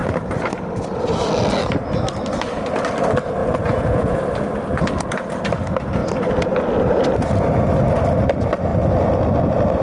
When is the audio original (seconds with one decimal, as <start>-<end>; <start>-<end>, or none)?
0.0-3.4; 4.2-9.8